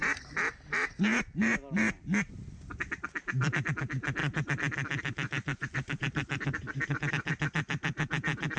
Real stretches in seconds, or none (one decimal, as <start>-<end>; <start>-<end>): 0.0-4.2; 7.1-8.6